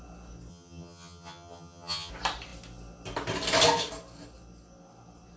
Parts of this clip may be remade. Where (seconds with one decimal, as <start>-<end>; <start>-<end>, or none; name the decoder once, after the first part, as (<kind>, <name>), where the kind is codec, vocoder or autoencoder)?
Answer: 0.5-2.1 (vocoder, HiFi-GAN)